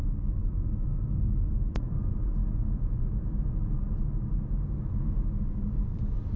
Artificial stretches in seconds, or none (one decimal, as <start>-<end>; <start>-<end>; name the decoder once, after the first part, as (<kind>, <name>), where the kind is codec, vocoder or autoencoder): 2.4-4.0 (vocoder, Vocos); 4.8-5.6